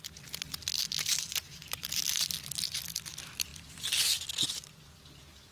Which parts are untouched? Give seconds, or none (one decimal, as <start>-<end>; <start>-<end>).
0.0-1.1; 1.9-5.5